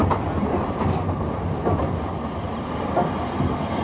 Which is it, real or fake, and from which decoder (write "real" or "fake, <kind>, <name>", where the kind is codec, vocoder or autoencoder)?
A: fake, vocoder, BigVGAN v2